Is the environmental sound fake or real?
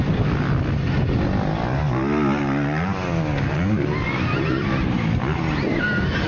real